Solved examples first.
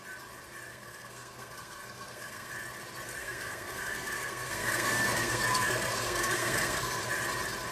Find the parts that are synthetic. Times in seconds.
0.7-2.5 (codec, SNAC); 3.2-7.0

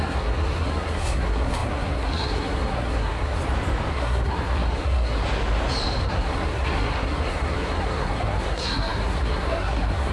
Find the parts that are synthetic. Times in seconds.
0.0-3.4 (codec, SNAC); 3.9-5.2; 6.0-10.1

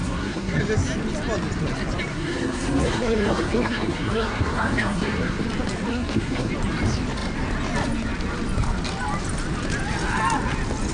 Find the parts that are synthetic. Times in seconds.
0.0-0.6 (codec, SNAC); 2.1-5.4; 5.9-6.5

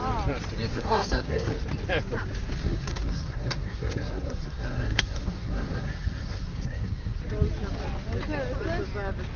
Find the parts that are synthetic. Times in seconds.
0.7-1.5 (codec, SNAC); 2.6-7.2